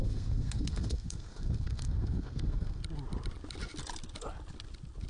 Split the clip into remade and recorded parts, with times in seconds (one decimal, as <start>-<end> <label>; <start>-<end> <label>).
0.0-2.8 remade; 2.8-5.1 recorded